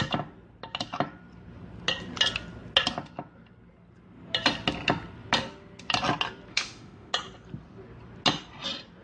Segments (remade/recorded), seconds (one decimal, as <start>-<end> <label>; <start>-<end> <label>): 0.0-6.5 recorded; 6.5-7.1 remade; 7.1-9.0 recorded